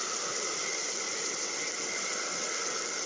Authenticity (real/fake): real